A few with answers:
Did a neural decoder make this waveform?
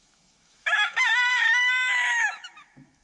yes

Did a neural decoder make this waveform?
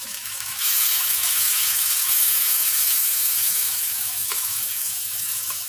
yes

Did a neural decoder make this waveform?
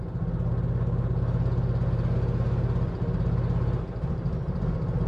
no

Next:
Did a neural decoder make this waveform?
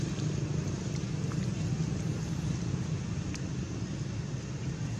no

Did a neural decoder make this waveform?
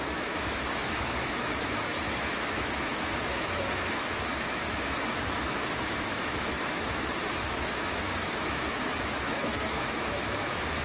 yes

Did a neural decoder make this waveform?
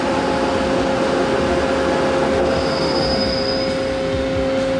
no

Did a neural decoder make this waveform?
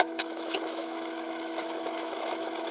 yes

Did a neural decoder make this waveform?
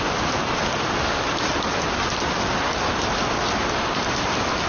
no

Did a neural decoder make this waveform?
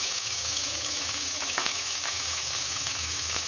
yes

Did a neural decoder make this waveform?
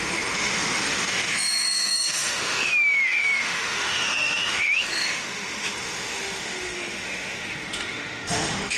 yes